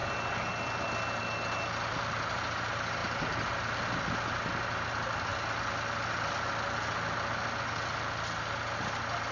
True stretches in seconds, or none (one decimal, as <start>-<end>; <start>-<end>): 0.0-9.3